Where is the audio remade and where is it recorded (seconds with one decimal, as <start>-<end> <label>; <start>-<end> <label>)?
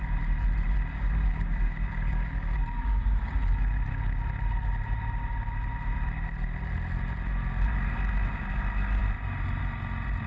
0.0-0.9 recorded; 0.9-3.6 remade; 3.6-10.3 recorded